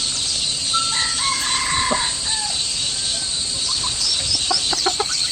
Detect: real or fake fake